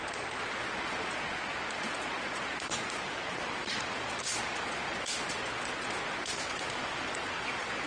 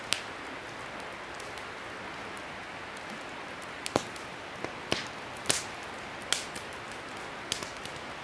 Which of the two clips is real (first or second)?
second